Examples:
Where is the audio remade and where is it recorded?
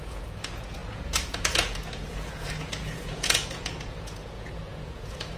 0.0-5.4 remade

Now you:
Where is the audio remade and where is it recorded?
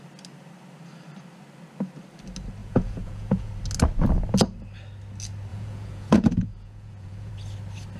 0.0-2.6 recorded; 2.6-3.5 remade; 3.5-5.5 recorded; 5.5-7.3 remade; 7.3-8.0 recorded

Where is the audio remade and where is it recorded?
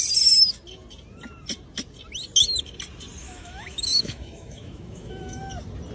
0.0-3.2 recorded; 3.2-5.4 remade; 5.4-5.9 recorded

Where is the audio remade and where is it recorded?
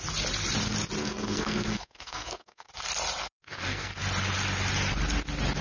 0.0-1.0 recorded; 1.0-2.7 remade; 2.7-3.2 recorded; 3.2-4.0 remade; 4.0-5.6 recorded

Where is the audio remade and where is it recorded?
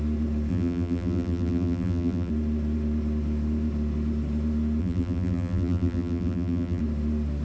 0.0-0.5 recorded; 0.5-2.3 remade; 2.3-4.8 recorded; 4.8-6.8 remade; 6.8-7.4 recorded